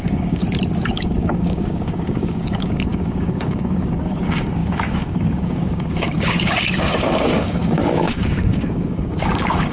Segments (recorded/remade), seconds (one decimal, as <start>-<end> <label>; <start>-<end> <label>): 0.0-0.4 remade; 0.4-0.9 recorded; 0.9-9.7 remade